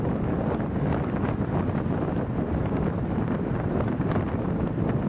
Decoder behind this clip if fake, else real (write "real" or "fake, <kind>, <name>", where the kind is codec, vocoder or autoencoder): real